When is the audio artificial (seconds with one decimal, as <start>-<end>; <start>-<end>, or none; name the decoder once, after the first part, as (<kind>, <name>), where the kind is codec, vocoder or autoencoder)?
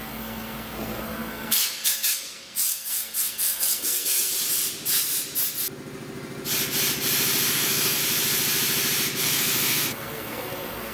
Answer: 0.0-4.3 (codec, SNAC); 7.5-8.0; 9.2-10.9